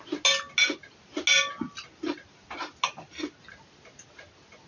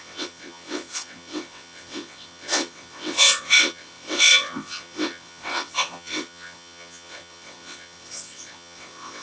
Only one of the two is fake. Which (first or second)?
second